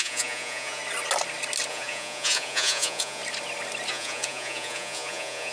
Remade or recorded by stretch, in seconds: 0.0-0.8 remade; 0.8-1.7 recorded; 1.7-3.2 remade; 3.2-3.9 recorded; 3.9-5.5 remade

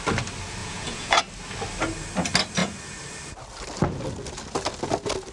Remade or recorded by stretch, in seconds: 0.0-0.6 recorded; 0.6-1.2 remade; 1.2-5.3 recorded

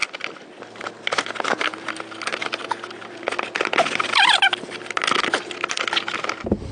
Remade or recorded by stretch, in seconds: 0.0-6.7 recorded